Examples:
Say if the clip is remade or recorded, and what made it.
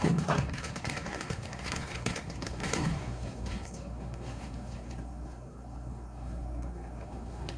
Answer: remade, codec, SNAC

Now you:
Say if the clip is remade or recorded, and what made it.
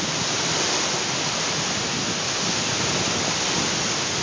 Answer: recorded